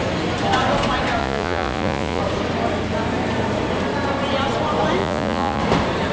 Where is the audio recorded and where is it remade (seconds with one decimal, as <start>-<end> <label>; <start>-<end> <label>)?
0.0-1.2 recorded; 1.2-2.2 remade; 2.2-5.0 recorded; 5.0-5.6 remade; 5.6-6.1 recorded